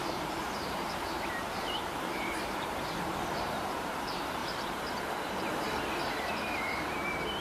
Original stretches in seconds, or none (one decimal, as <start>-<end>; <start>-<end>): 4.4-6.3